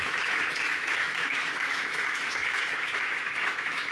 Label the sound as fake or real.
fake